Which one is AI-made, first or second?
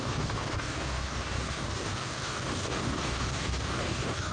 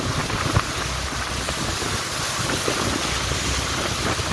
first